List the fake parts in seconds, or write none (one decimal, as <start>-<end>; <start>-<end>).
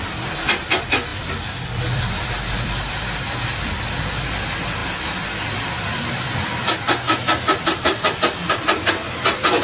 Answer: 1.1-4.1